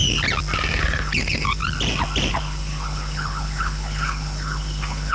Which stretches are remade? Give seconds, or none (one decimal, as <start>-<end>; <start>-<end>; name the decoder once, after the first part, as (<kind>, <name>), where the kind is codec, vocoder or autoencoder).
0.8-1.6 (codec, HILCodec); 2.3-5.1